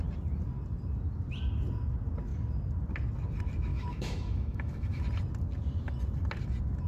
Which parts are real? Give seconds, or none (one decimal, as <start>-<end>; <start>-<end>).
0.0-3.7; 5.0-6.9